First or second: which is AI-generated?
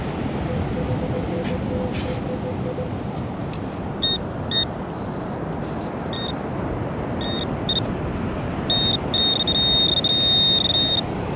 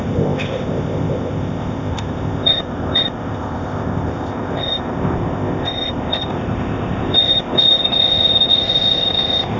second